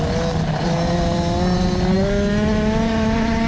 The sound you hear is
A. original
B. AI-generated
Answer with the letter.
A